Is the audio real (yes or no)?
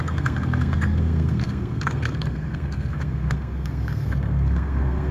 no